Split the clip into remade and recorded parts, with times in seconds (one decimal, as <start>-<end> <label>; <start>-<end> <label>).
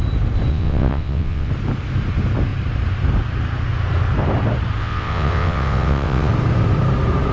0.0-0.5 recorded; 0.5-1.5 remade; 1.5-4.8 recorded; 4.8-6.3 remade; 6.3-7.3 recorded